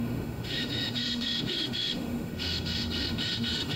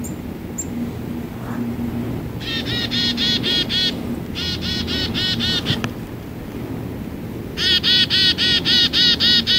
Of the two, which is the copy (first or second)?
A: first